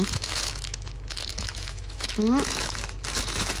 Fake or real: fake